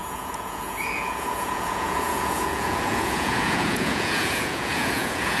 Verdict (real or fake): fake